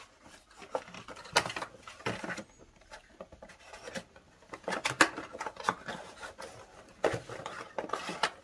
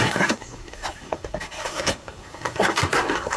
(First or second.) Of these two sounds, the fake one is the second